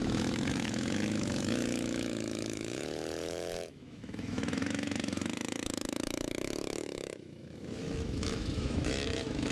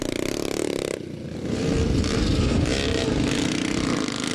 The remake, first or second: first